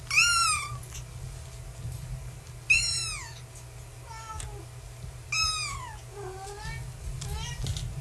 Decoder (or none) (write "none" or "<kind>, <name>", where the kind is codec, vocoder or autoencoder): none